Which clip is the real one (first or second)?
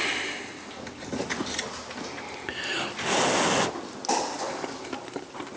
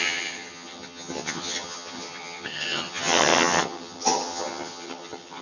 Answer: first